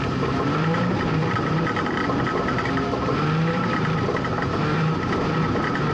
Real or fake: fake